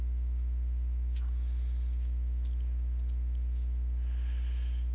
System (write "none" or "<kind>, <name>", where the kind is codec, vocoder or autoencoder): none